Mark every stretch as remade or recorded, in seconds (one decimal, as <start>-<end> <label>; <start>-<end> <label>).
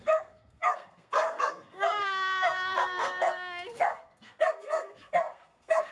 0.0-5.9 remade